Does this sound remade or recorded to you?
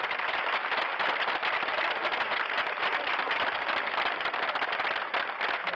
recorded